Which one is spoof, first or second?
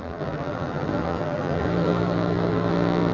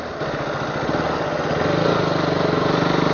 first